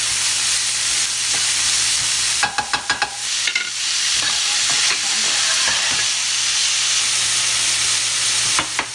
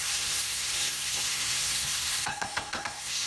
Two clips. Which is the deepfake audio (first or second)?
second